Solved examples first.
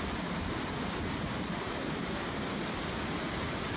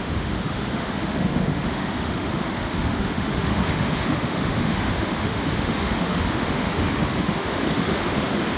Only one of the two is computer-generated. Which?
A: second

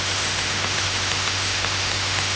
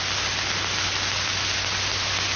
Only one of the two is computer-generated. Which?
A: first